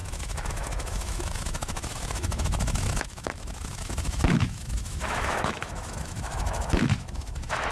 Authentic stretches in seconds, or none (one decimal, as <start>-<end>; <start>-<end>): none